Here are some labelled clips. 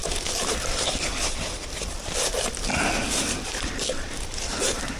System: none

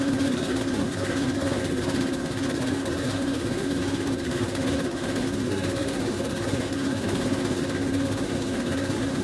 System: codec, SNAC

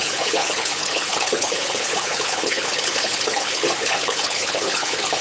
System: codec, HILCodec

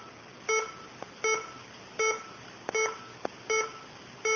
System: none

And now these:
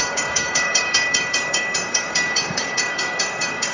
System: codec, DAC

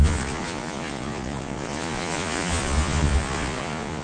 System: vocoder, Vocos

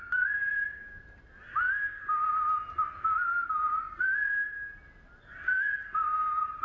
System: none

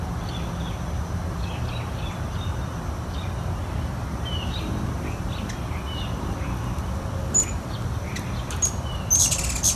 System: none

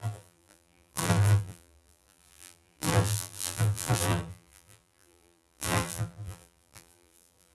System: vocoder, BigVGAN v2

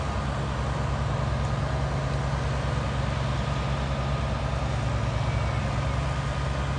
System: none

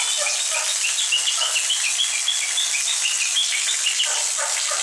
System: none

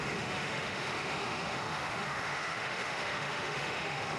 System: autoencoder, DAC-VAE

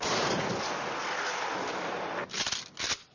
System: none